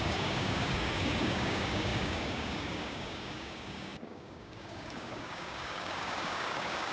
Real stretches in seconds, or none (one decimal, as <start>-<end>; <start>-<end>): none